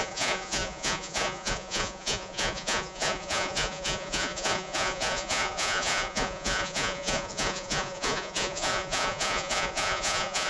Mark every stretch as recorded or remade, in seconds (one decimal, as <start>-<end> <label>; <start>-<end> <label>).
0.0-10.5 remade